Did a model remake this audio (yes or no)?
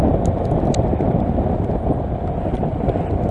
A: no